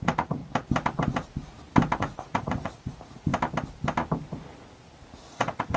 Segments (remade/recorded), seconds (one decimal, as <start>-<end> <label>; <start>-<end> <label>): 0.0-0.4 remade; 0.4-2.0 recorded; 2.0-3.3 remade; 3.3-5.3 recorded; 5.3-5.8 remade